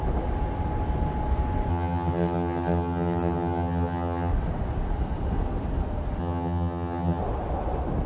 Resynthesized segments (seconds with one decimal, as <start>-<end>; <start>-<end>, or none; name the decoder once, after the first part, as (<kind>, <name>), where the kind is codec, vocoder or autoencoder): 1.7-4.3 (vocoder, HiFi-GAN); 6.2-7.2